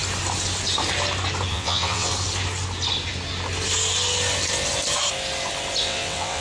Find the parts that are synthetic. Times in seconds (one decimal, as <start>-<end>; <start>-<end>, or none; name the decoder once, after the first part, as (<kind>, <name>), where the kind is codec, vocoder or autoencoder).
1.5-2.1 (vocoder, WaveNeXt); 5.8-6.4